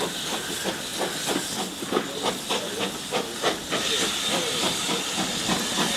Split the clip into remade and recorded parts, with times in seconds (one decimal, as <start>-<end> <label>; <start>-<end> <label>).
0.0-6.0 recorded